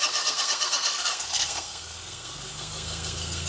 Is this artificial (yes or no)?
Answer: yes